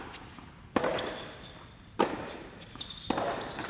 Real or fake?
real